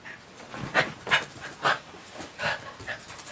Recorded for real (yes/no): yes